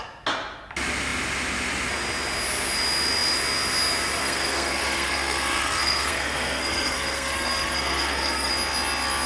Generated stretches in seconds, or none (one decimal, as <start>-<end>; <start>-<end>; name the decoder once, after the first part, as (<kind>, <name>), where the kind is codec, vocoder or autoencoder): 4.2-8.5 (codec, SNAC)